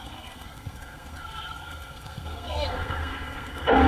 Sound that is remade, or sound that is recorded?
remade